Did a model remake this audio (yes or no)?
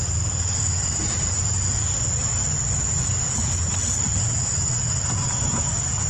no